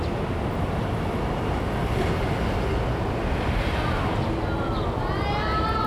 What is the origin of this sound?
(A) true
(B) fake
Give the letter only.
A